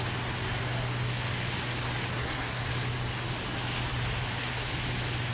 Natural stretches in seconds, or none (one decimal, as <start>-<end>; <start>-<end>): 0.0-2.1; 2.6-5.3

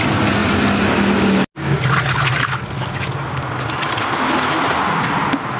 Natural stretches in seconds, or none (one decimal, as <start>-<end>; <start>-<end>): 0.0-5.6

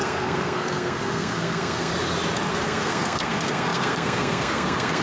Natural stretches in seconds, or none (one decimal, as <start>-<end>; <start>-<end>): 1.9-2.5

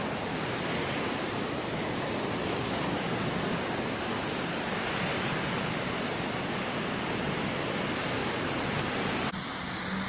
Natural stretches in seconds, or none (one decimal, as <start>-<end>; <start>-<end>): 0.0-8.2; 8.9-10.1

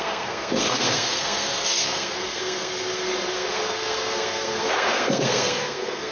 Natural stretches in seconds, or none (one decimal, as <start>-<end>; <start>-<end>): none

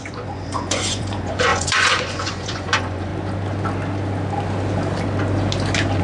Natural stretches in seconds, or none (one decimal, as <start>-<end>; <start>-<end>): 3.1-6.0

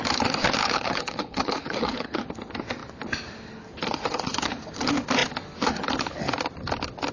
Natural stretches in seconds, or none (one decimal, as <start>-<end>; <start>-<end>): 0.0-0.6; 2.2-7.1